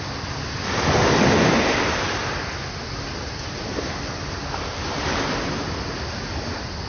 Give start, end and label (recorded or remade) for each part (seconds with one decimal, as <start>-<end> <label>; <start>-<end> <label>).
0.0-6.9 recorded